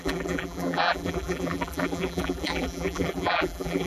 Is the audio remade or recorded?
remade